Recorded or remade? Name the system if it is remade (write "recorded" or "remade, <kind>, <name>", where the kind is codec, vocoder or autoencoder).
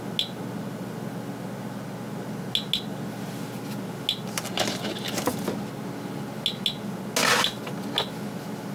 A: recorded